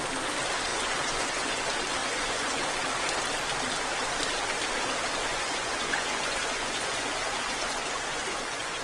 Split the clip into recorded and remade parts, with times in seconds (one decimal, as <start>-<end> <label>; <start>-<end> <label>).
0.0-0.7 recorded; 0.7-1.6 remade; 1.6-2.0 recorded; 2.0-2.7 remade; 2.7-5.3 recorded; 5.3-8.8 remade